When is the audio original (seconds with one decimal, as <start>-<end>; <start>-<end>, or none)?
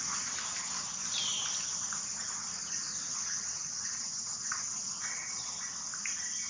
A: 0.0-3.1; 5.7-6.5